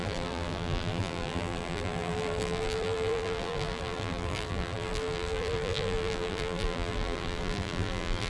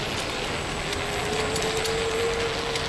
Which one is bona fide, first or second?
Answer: second